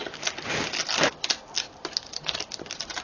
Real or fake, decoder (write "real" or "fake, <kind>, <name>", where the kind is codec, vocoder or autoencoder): real